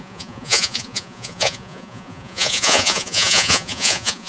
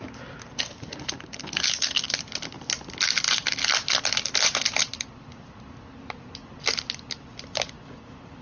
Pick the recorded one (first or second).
second